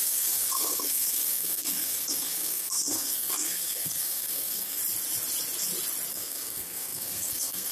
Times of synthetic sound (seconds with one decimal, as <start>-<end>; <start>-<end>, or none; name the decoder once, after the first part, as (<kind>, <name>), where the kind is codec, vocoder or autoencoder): 0.0-4.8 (codec, SNAC); 6.1-7.7